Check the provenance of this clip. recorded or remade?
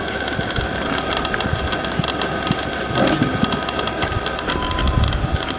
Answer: recorded